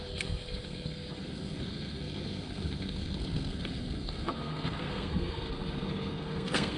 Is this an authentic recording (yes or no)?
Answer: no